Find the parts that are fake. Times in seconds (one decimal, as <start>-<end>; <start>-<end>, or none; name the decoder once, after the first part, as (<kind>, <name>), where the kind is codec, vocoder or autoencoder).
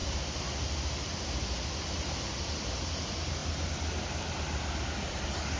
none